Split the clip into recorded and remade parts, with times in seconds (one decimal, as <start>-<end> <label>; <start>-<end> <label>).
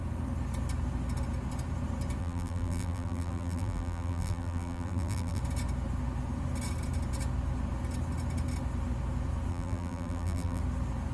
0.0-2.2 recorded; 2.2-5.4 remade; 5.4-9.5 recorded; 9.5-10.6 remade; 10.6-11.1 recorded